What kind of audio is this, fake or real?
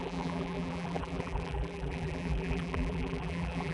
fake